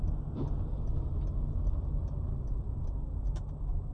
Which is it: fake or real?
real